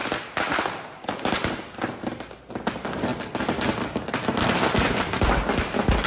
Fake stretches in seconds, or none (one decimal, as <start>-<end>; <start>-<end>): none